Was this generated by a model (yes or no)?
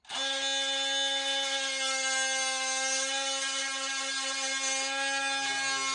no